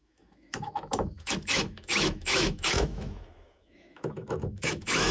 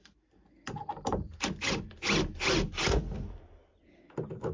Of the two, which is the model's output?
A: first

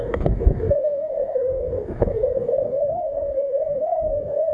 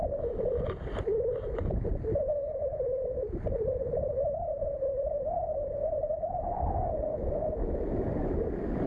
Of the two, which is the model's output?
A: first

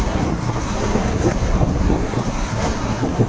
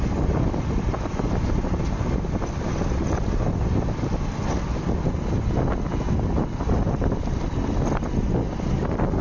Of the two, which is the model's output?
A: first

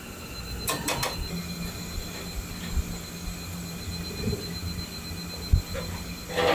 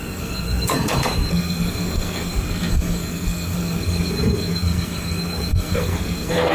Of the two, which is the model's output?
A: second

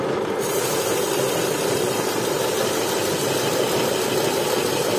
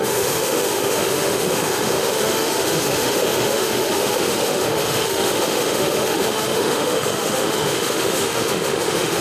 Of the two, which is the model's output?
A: second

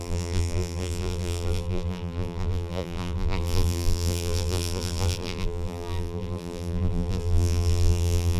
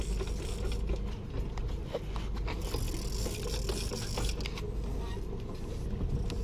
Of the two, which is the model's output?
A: first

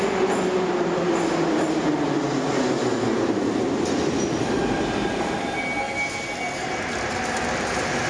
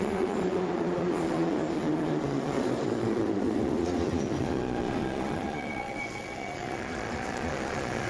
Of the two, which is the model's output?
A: second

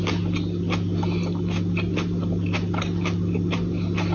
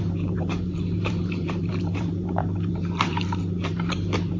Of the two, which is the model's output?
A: second